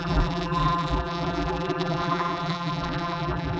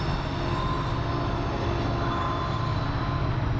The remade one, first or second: first